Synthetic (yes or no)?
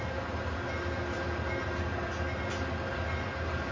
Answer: no